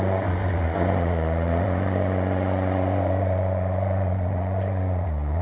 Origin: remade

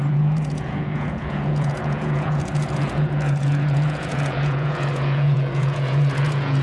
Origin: remade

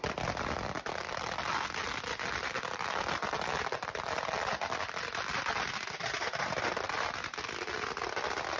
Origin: recorded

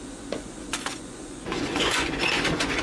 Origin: remade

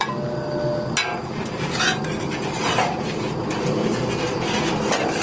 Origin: recorded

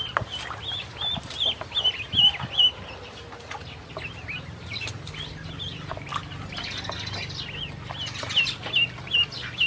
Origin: recorded